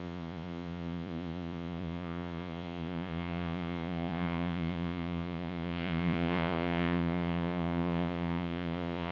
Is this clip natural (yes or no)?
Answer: no